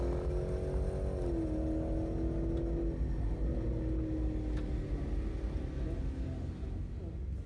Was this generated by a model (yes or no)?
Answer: no